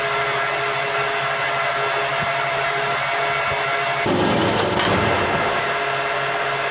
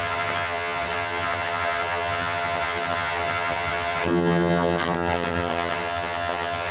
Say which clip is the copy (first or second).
second